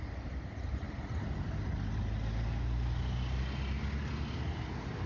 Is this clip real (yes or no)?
yes